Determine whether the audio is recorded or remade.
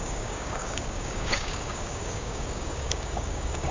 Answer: remade